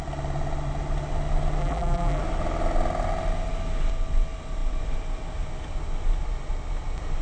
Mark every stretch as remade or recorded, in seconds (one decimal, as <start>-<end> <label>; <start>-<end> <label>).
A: 0.0-1.6 recorded; 1.6-2.2 remade; 2.2-7.2 recorded